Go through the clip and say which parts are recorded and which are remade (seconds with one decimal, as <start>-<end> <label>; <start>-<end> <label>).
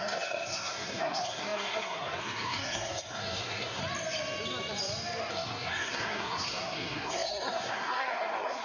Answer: 0.0-3.8 remade; 3.8-5.3 recorded; 5.3-8.6 remade